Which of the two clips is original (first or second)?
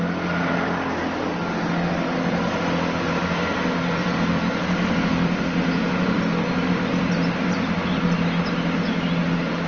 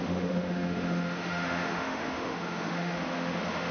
first